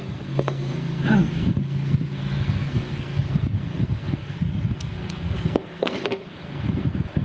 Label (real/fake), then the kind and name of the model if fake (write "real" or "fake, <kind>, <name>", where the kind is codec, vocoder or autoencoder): fake, codec, SNAC